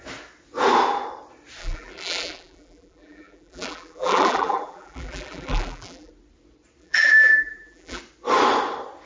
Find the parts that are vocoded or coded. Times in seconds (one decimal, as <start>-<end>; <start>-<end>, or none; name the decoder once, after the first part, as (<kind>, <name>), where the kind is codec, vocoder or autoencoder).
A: 1.6-6.1 (vocoder, BigVGAN v2); 6.8-8.0